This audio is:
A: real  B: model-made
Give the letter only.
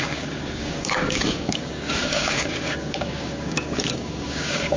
B